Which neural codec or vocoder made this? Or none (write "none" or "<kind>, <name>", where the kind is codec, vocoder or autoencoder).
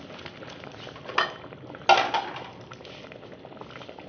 none